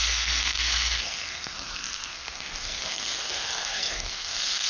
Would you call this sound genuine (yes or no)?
no